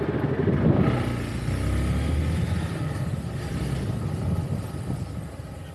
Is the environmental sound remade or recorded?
recorded